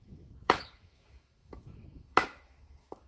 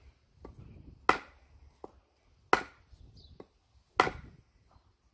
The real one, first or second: second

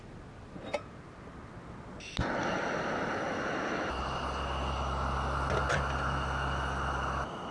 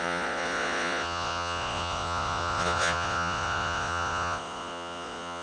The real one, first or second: first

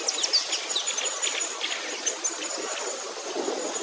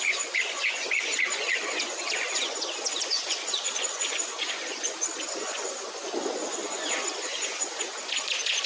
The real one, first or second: first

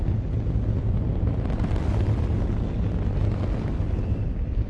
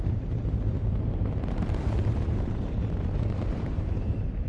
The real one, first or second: first